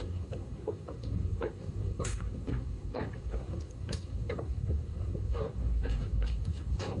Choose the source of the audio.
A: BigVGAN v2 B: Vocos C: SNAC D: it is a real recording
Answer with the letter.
C